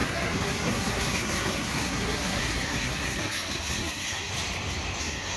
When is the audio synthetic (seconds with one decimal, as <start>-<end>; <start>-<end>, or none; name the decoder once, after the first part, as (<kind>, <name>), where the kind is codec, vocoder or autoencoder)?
0.0-4.3 (codec, SNAC); 5.0-5.4